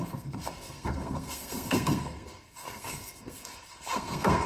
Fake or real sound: fake